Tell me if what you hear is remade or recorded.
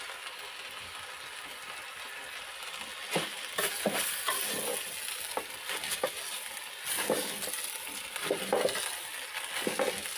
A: recorded